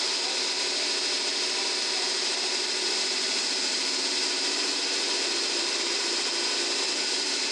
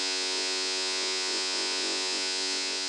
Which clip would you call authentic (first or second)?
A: first